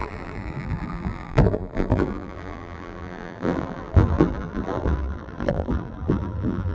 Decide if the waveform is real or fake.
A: fake